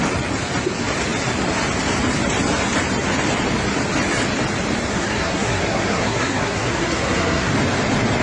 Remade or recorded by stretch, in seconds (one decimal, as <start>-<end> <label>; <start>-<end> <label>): 0.0-4.9 recorded; 4.9-7.5 remade; 7.5-8.2 recorded